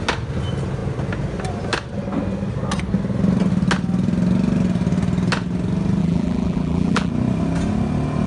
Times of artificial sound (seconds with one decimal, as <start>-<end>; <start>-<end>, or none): 6.0-7.1